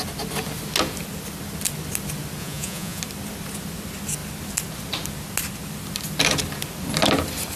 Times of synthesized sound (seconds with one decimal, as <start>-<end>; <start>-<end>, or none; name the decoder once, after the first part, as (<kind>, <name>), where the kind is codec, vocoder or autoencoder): 2.4-3.0 (vocoder, Vocos)